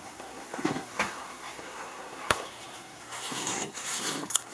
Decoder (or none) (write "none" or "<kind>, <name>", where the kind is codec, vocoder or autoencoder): codec, SNAC